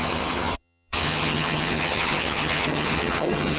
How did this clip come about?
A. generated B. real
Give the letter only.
A